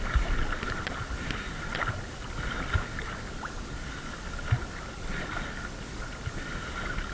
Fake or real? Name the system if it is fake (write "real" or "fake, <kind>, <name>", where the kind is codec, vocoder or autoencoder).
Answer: real